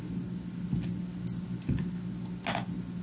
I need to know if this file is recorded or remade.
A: recorded